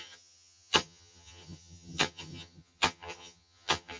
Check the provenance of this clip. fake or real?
fake